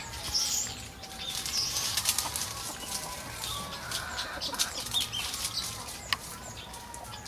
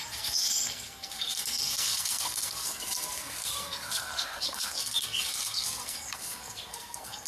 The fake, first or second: second